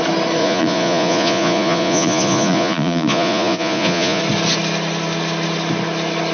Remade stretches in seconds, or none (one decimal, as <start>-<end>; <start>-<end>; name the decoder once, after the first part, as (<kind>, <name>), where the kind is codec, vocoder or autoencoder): 0.4-4.2 (vocoder, Vocos)